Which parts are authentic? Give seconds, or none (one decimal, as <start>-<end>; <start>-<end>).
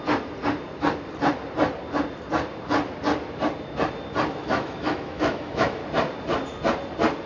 0.0-4.4; 5.8-7.3